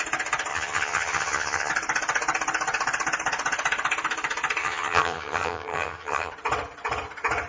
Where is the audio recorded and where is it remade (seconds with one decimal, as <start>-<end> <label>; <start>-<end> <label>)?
0.0-0.5 recorded; 0.5-1.7 remade; 1.7-4.6 recorded; 4.6-6.3 remade; 6.3-7.5 recorded